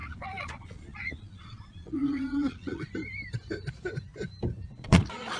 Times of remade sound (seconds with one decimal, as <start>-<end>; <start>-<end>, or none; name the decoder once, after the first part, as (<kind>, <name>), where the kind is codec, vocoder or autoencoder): 0.0-2.9 (vocoder, Vocos); 4.7-5.4